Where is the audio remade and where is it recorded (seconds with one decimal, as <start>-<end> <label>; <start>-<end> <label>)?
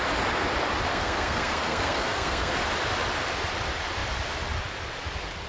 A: 0.0-0.9 recorded; 0.9-2.5 remade; 2.5-5.5 recorded